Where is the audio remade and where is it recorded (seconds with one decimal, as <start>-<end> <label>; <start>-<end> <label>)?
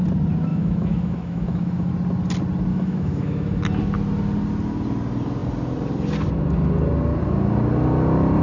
0.0-0.5 recorded; 0.5-1.9 remade; 1.9-2.7 recorded; 2.7-3.6 remade; 3.6-8.4 recorded